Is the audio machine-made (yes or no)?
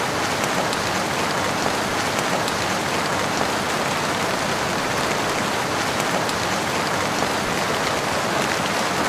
no